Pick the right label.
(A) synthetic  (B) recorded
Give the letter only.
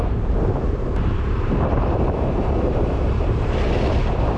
A